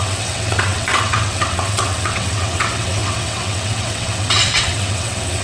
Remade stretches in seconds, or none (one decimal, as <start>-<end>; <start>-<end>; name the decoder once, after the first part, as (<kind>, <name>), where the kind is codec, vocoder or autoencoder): 0.0-5.4 (vocoder, WaveNeXt)